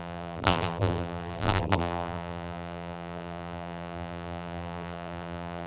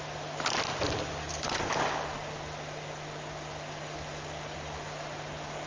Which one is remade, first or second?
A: first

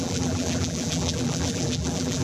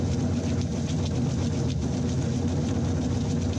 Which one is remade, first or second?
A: first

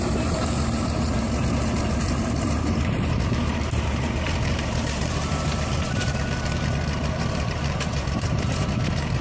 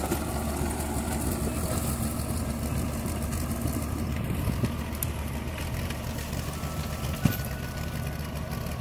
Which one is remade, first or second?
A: first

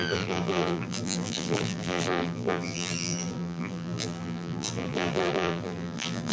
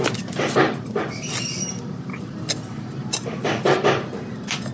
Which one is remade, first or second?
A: first